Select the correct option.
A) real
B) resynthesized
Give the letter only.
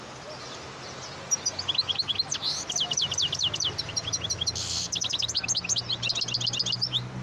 A